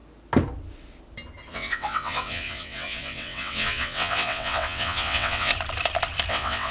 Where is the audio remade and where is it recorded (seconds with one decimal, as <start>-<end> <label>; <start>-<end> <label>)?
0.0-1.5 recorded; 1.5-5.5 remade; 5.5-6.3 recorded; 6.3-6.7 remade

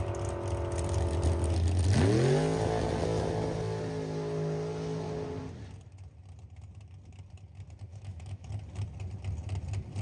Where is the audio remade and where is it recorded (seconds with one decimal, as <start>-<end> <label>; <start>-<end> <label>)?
0.0-7.9 recorded; 7.9-8.5 remade; 8.5-10.0 recorded

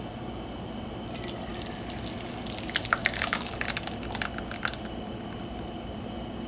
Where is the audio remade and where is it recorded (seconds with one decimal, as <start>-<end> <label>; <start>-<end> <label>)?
0.0-3.0 recorded; 3.0-3.5 remade; 3.5-6.5 recorded

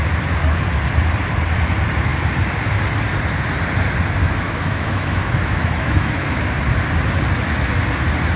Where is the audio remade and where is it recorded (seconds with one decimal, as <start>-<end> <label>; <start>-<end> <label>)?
0.0-4.2 recorded; 4.2-6.4 remade; 6.4-8.4 recorded